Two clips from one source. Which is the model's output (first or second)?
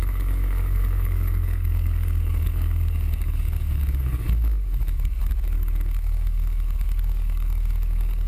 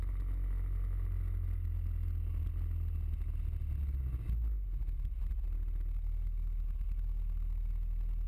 first